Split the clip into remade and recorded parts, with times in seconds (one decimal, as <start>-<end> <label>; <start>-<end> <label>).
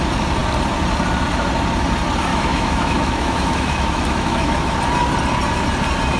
0.0-2.3 recorded; 2.3-4.8 remade; 4.8-6.2 recorded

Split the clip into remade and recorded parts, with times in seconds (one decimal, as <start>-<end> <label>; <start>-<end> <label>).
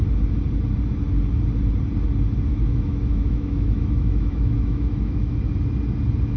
0.0-2.5 recorded; 2.5-5.4 remade; 5.4-6.4 recorded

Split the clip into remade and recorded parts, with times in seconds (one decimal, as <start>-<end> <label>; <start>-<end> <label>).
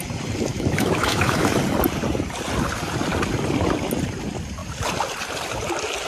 0.0-0.5 recorded; 0.5-1.5 remade; 1.5-6.1 recorded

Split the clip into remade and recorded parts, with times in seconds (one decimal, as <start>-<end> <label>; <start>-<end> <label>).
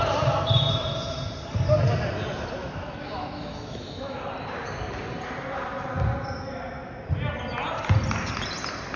0.0-2.6 recorded; 2.6-4.2 remade; 4.2-9.0 recorded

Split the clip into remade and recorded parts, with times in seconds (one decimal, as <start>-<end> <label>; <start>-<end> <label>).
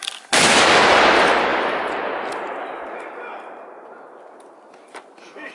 0.0-5.5 recorded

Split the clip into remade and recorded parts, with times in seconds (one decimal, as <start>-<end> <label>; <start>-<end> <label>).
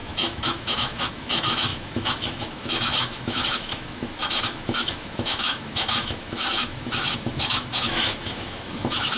0.0-9.2 remade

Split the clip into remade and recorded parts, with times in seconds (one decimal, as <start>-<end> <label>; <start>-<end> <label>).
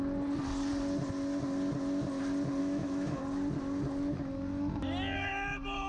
0.0-2.6 recorded; 2.6-3.2 remade; 3.2-5.9 recorded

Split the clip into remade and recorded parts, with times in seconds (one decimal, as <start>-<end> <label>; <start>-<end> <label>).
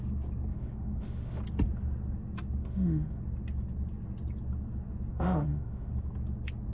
0.0-0.5 recorded; 0.5-1.4 remade; 1.4-2.6 recorded; 2.6-3.2 remade; 3.2-5.1 recorded; 5.1-5.9 remade; 5.9-6.7 recorded